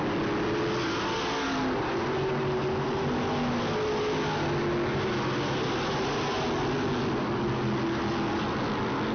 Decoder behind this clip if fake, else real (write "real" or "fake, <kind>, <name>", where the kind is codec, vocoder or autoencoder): real